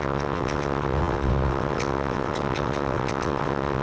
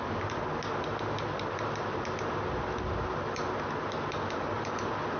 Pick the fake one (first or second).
first